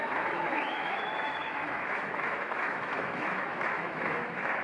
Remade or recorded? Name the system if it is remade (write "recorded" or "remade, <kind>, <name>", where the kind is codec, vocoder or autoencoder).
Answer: remade, autoencoder, DAC-VAE